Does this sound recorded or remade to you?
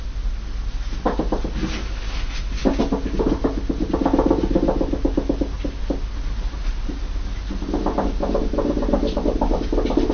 recorded